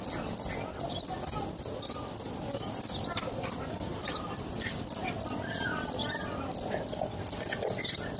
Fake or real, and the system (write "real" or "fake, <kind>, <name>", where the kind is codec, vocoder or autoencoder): real